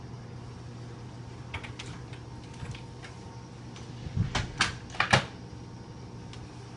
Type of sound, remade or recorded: recorded